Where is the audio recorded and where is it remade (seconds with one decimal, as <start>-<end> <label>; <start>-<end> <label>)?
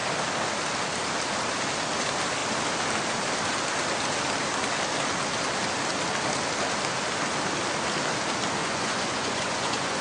0.0-8.6 recorded; 8.6-10.0 remade